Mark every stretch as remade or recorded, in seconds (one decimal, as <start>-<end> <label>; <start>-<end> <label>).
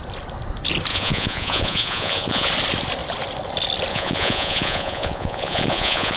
0.0-0.9 recorded; 0.9-2.5 remade; 2.5-3.9 recorded; 3.9-6.2 remade